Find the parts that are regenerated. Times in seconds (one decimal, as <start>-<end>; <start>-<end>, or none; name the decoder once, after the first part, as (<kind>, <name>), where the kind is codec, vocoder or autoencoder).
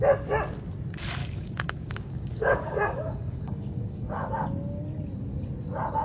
1.2-4.3 (codec, DAC)